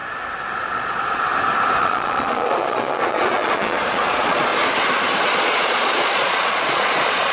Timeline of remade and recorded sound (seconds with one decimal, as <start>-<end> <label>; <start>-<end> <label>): 0.0-0.6 recorded; 0.6-1.3 remade; 1.3-1.8 recorded; 1.8-4.5 remade; 4.5-5.2 recorded; 5.2-7.3 remade